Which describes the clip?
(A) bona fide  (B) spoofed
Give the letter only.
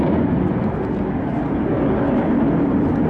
A